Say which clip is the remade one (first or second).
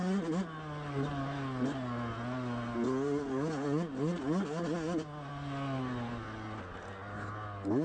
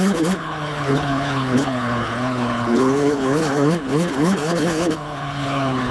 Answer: second